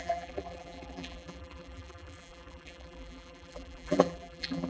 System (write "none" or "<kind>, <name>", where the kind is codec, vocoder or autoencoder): vocoder, BigVGAN v2